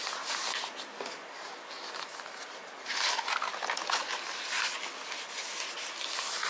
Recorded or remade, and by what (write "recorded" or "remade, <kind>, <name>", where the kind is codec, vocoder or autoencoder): recorded